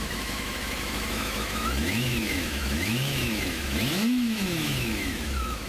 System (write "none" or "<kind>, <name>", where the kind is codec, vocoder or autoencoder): autoencoder, DAC-VAE